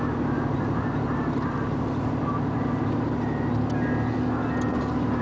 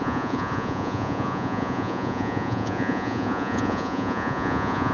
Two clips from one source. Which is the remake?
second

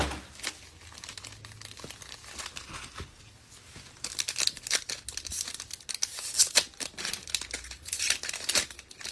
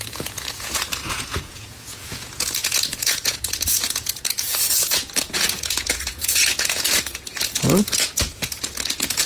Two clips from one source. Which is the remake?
second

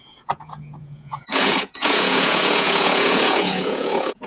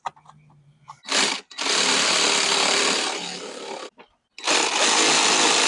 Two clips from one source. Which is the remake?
first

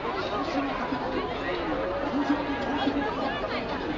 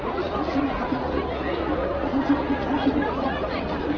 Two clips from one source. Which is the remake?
second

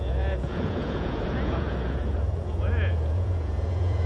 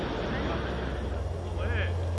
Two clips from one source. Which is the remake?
first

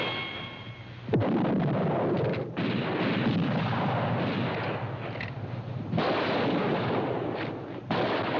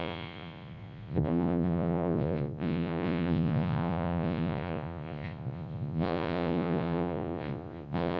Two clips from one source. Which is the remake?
second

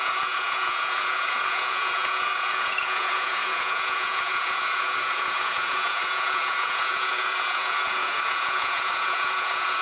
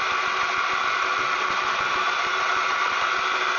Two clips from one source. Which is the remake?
first